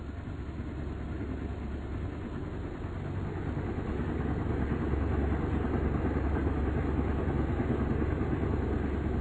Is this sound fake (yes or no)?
no